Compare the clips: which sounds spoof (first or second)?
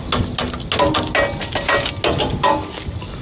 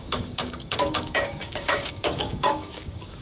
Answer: second